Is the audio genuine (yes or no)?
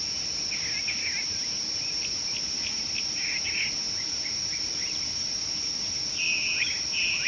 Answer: yes